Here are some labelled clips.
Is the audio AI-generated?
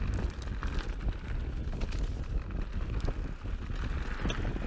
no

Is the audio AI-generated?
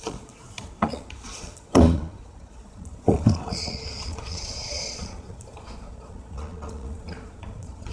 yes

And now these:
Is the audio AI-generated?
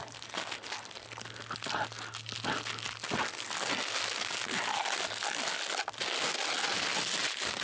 no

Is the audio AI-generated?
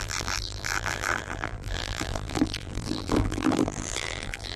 yes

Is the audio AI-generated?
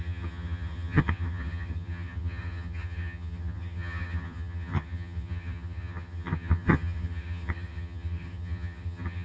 yes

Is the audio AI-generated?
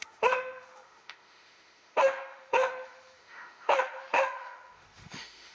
yes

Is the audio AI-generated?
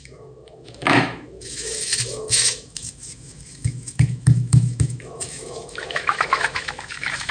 yes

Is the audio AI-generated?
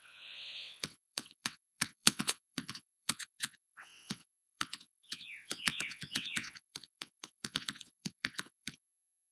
yes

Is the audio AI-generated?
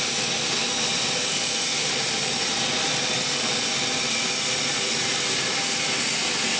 no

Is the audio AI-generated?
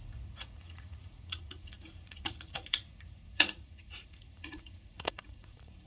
yes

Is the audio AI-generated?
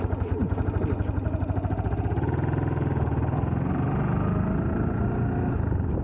no